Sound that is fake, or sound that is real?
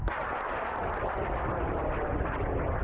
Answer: real